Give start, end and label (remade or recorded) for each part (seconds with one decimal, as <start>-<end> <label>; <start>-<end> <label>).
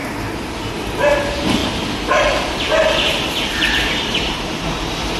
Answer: 0.0-5.2 recorded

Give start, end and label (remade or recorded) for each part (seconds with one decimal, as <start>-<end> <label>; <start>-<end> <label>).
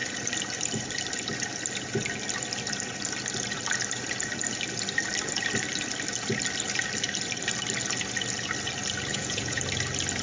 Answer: 0.0-9.1 recorded; 9.1-9.6 remade; 9.6-10.2 recorded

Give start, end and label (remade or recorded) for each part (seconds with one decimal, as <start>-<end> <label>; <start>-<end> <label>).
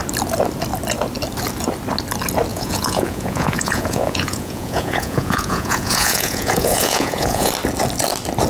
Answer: 0.0-2.5 recorded; 2.5-7.5 remade; 7.5-8.5 recorded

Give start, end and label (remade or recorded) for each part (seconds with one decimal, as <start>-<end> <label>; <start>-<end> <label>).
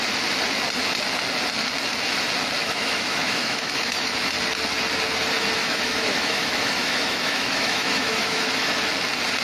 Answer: 0.0-2.6 recorded; 2.6-4.3 remade; 4.3-5.6 recorded; 5.6-8.8 remade; 8.8-9.4 recorded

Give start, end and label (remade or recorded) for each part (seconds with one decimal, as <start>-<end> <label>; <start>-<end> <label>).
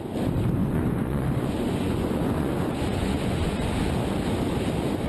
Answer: 0.0-0.6 recorded; 0.6-3.7 remade; 3.7-5.1 recorded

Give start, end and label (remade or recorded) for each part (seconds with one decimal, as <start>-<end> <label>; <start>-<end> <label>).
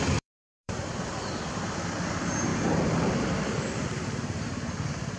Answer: 0.0-5.2 remade